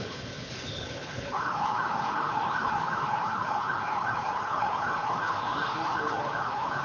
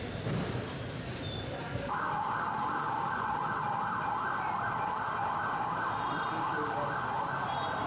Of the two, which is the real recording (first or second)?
second